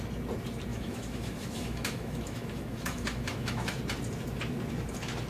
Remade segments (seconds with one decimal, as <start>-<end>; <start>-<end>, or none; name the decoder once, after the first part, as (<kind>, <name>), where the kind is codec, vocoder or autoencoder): 0.7-3.8 (autoencoder, DAC-VAE)